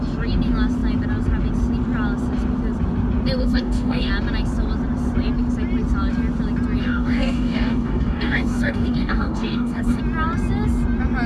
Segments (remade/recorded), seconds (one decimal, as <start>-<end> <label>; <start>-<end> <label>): 0.0-3.4 recorded; 3.4-4.1 remade; 4.1-6.8 recorded; 6.8-10.0 remade; 10.0-11.3 recorded